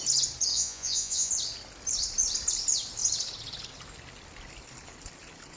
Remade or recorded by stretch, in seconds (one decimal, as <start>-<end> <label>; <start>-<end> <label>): 0.0-0.5 recorded; 0.5-1.3 remade; 1.3-5.6 recorded